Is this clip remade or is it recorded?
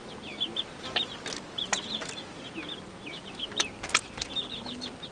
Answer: recorded